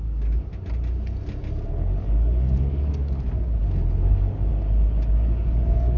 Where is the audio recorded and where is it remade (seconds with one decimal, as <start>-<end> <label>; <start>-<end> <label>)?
0.0-0.5 remade; 0.5-2.0 recorded; 2.0-3.6 remade; 3.6-4.1 recorded; 4.1-4.5 remade; 4.5-5.1 recorded; 5.1-6.0 remade